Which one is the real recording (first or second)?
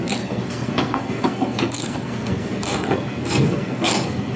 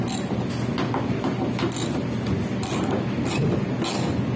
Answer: second